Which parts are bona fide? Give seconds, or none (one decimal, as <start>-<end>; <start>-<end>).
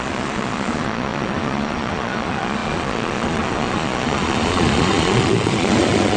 none